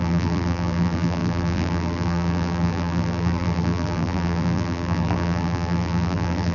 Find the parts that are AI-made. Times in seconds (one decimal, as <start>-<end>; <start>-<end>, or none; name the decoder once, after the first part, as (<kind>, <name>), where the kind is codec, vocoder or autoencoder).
0.0-6.5 (vocoder, BigVGAN v2)